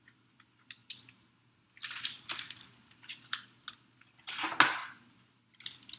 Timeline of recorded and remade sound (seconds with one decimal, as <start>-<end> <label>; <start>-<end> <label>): 0.0-6.0 recorded